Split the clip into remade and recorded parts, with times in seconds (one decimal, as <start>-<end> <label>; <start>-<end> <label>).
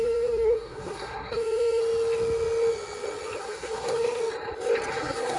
0.0-1.8 remade; 1.8-3.4 recorded; 3.4-4.2 remade; 4.2-4.9 recorded; 4.9-5.4 remade